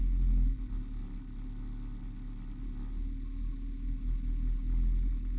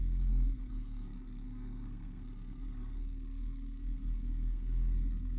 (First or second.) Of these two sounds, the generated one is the second